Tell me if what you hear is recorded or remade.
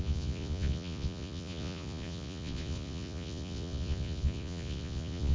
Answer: remade